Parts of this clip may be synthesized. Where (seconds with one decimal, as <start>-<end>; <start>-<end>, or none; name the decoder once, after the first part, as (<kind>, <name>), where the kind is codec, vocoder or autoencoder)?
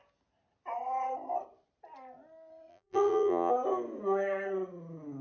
2.7-3.5 (vocoder, BigVGAN v2)